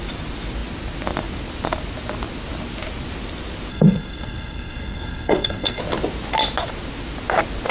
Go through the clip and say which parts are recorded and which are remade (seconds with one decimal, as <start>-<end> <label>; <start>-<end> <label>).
0.0-3.7 recorded; 3.7-5.8 remade; 5.8-7.7 recorded